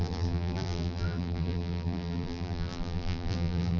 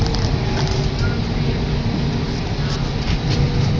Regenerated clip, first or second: first